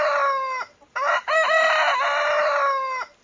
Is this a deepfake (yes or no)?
no